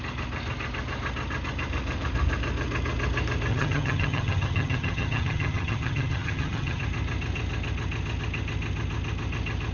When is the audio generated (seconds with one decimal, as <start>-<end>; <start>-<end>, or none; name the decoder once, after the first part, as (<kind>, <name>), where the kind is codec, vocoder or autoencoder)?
3.5-6.8 (vocoder, HiFi-GAN)

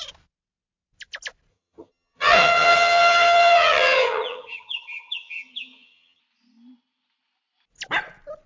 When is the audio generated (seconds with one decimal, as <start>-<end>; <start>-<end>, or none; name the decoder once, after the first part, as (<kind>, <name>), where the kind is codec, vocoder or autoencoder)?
1.5-6.2 (vocoder, HiFi-GAN)